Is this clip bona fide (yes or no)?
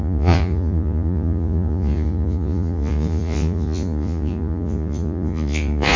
no